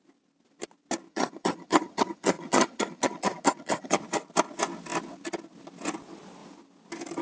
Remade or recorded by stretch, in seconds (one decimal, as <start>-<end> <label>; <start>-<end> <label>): 0.0-1.1 recorded; 1.1-4.0 remade; 4.0-7.2 recorded